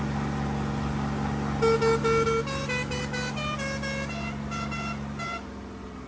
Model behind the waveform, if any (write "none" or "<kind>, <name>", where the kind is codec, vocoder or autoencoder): none